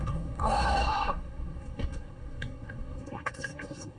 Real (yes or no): no